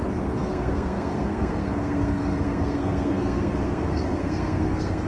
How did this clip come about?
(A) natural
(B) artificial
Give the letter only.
B